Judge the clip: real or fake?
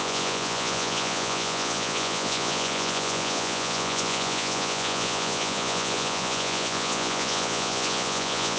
fake